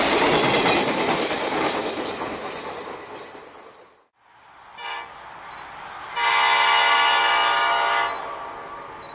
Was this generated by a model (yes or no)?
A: no